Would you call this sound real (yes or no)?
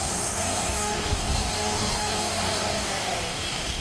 no